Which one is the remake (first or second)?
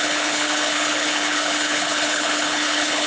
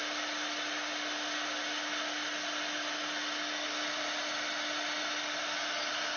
first